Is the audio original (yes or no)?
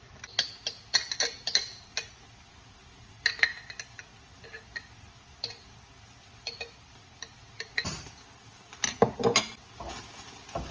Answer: yes